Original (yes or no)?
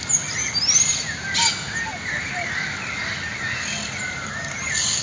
yes